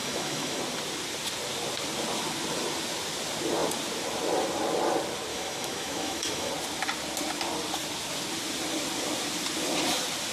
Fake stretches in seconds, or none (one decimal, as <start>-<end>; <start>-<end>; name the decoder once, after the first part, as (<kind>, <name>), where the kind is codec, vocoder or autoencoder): 0.0-0.6 (autoencoder, DAC-VAE); 5.3-6.5